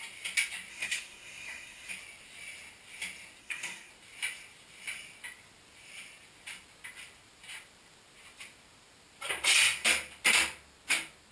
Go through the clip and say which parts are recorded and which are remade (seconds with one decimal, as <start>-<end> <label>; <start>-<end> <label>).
0.0-0.7 recorded; 0.7-1.9 remade; 1.9-3.4 recorded; 3.4-3.9 remade; 3.9-11.3 recorded